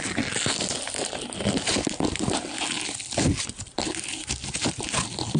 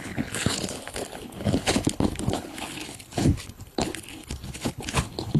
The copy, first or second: second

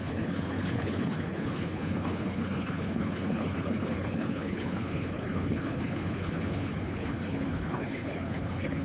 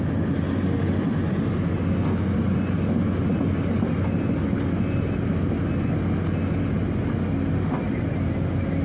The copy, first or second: first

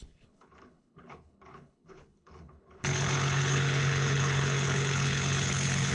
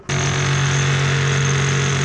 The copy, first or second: first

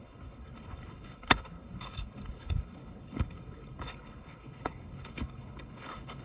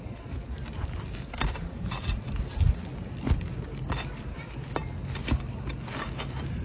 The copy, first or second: first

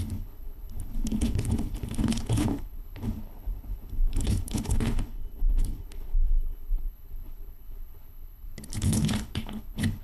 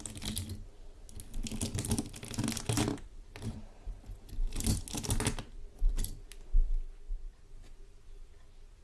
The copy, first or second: first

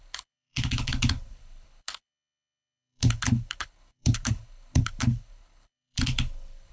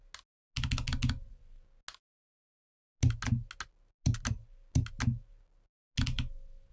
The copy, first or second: first